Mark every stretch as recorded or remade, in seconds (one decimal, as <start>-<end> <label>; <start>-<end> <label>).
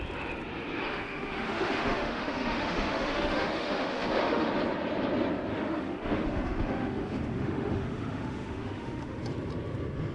0.0-0.8 recorded; 0.8-4.5 remade; 4.5-5.5 recorded; 5.5-9.2 remade; 9.2-10.1 recorded